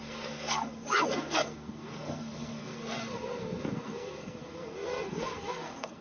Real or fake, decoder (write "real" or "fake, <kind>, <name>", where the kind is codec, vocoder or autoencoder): fake, codec, SNAC